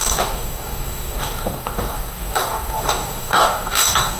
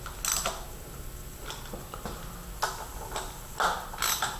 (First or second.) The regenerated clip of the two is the first